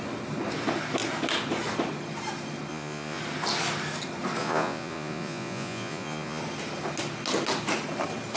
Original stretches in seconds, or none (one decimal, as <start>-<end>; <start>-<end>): 0.0-2.7; 3.2-4.4; 6.4-8.4